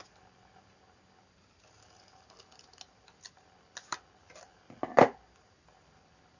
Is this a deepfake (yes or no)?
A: no